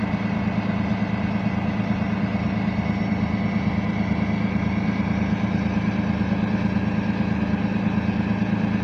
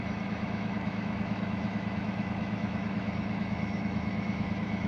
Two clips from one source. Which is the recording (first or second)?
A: first